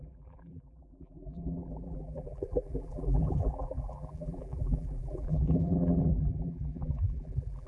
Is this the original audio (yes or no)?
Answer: no